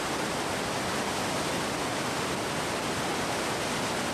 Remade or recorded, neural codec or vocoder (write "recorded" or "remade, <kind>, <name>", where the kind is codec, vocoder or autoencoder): recorded